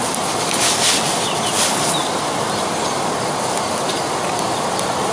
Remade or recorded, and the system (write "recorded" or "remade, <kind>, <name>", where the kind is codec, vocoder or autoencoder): recorded